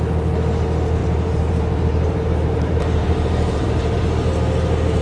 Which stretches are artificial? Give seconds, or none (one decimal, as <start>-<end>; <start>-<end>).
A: 1.0-4.0